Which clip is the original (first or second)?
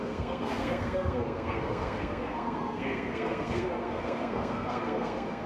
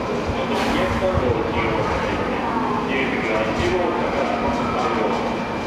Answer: second